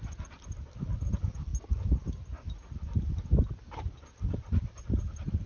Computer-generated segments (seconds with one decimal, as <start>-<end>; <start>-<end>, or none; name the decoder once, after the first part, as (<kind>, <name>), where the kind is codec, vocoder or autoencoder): none